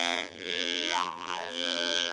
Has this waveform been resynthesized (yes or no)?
yes